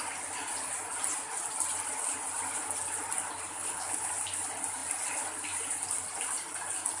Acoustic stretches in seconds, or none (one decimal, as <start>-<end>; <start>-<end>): 0.0-3.5; 4.1-7.0